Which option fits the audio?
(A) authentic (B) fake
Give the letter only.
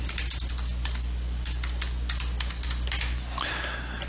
A